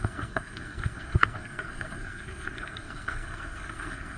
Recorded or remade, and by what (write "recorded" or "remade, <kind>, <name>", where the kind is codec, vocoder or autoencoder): remade, codec, SNAC